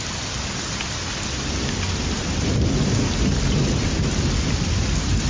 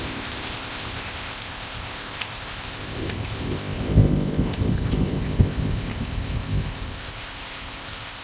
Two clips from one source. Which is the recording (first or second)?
first